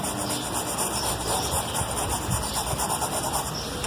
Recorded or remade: recorded